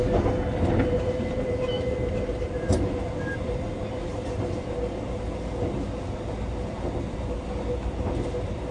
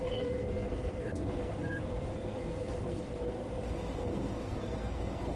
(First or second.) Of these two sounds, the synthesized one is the second